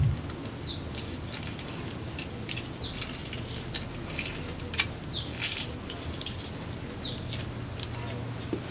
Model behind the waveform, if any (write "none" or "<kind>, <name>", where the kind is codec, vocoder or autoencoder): none